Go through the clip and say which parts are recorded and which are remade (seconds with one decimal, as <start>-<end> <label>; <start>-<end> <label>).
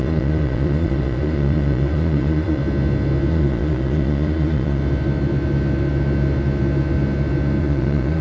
0.0-2.6 remade; 2.6-3.3 recorded; 3.3-4.8 remade; 4.8-7.6 recorded; 7.6-8.2 remade